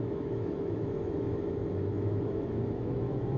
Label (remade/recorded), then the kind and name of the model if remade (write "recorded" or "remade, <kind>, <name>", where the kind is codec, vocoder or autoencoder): remade, autoencoder, DAC-VAE